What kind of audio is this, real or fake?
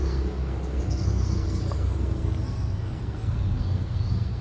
fake